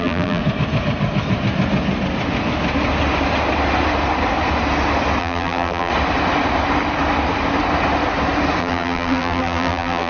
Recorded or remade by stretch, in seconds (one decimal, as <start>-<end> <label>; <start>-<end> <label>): 0.0-0.4 remade; 0.4-5.2 recorded; 5.2-5.9 remade; 5.9-8.6 recorded; 8.6-10.1 remade